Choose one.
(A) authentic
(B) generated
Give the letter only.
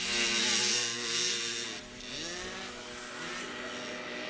A